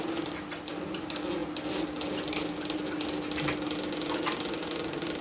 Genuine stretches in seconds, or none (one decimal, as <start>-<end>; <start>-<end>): 0.0-5.2